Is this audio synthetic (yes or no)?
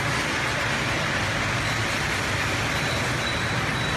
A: no